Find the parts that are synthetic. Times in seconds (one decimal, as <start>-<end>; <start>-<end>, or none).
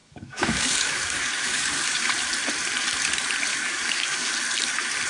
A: 0.0-2.1; 3.5-4.3